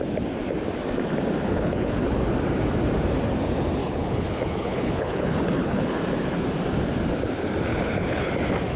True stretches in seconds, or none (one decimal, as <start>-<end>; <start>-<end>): 0.0-1.5; 2.2-3.8; 6.0-7.7; 8.3-8.8